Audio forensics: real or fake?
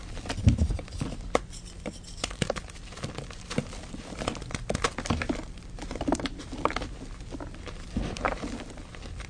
real